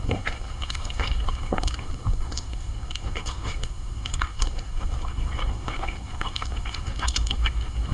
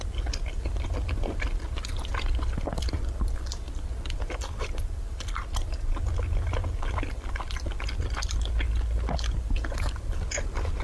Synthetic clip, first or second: first